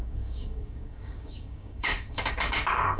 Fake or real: fake